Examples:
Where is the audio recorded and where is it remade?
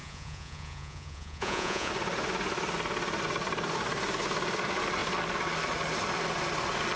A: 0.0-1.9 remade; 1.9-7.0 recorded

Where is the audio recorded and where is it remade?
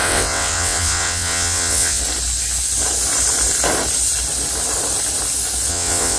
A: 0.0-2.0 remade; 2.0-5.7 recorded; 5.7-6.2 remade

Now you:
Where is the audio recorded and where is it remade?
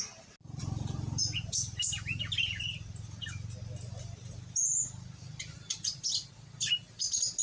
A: 0.0-7.4 recorded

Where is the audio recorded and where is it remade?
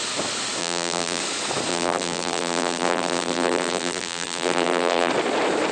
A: 0.0-0.6 recorded; 0.6-1.2 remade; 1.2-1.7 recorded; 1.7-5.1 remade; 5.1-5.7 recorded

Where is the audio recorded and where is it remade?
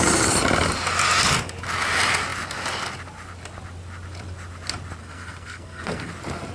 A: 0.0-5.0 recorded; 5.0-6.1 remade; 6.1-6.5 recorded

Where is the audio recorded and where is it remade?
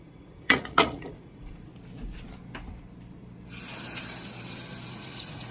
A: 0.0-1.7 remade; 1.7-4.9 recorded; 4.9-5.5 remade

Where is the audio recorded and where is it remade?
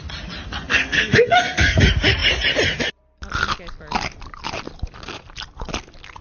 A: 0.0-0.8 recorded; 0.8-1.8 remade; 1.8-6.2 recorded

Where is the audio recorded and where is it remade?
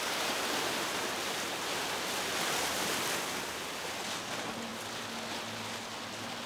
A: 0.0-6.5 recorded